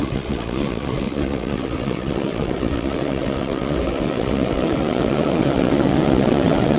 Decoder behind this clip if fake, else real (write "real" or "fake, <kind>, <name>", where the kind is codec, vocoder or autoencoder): fake, vocoder, WaveNeXt